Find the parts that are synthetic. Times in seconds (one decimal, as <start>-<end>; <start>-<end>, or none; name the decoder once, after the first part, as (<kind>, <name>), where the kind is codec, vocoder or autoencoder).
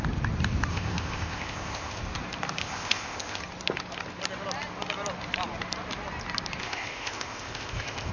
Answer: 0.7-2.0 (codec, ZipCodec); 2.6-3.4; 6.6-8.1